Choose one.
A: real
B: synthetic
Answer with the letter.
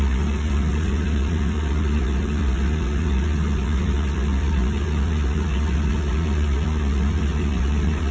B